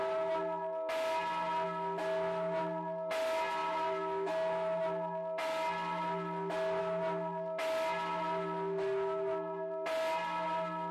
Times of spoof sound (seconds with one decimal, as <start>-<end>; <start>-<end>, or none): none